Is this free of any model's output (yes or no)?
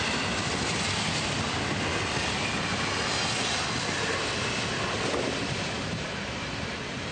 yes